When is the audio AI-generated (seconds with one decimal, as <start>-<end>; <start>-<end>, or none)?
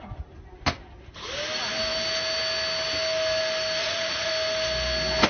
3.8-4.3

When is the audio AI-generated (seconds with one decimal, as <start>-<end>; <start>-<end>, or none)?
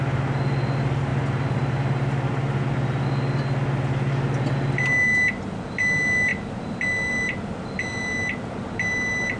none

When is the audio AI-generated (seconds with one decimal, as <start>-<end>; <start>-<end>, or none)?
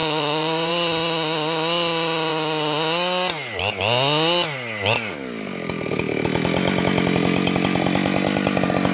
0.0-0.7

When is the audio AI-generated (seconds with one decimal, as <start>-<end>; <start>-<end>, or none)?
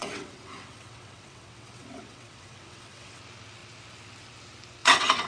0.0-3.2; 4.8-5.3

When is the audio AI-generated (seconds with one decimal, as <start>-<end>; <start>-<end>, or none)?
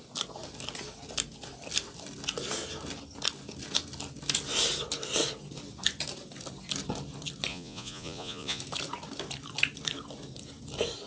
7.5-8.6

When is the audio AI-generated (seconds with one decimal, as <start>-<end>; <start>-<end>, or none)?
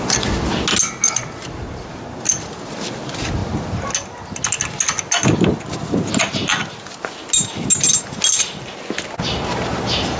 none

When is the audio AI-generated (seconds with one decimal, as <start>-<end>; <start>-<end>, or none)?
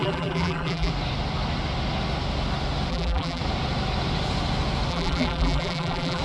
0.0-0.9; 2.9-3.4; 4.9-6.2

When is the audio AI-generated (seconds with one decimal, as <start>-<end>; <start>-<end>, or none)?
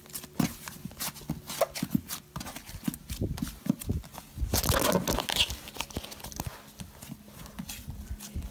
none